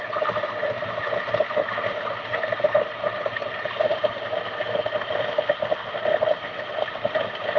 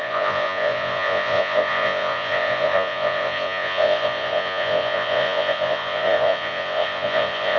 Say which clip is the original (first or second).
first